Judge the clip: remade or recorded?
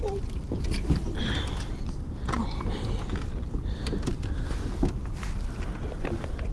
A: recorded